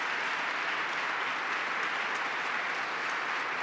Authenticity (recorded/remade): recorded